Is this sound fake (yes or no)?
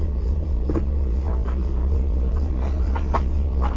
yes